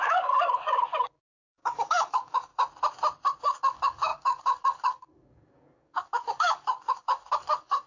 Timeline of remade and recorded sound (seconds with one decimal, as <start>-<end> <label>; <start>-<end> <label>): 0.0-2.5 remade; 2.5-3.4 recorded; 3.4-7.9 remade